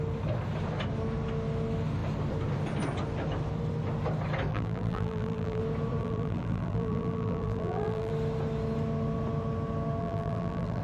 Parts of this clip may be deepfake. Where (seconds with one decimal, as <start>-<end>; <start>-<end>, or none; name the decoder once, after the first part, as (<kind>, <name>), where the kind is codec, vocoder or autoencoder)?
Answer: 4.5-5.6 (vocoder, BigVGAN v2); 6.0-8.1; 10.0-10.8